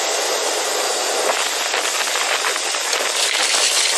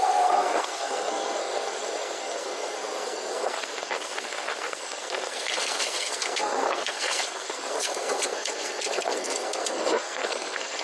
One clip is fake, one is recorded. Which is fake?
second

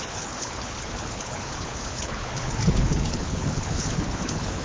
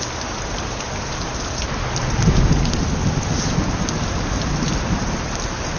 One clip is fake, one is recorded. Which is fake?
first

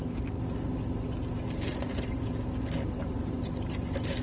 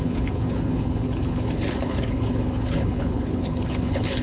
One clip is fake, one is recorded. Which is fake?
second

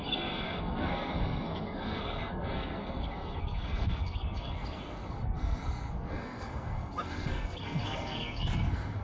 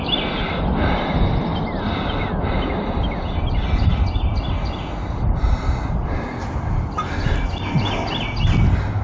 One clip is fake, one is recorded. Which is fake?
first